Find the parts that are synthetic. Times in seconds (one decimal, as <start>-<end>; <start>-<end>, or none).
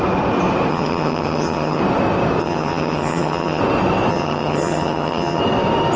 0.7-1.8; 2.4-3.6; 4.1-5.4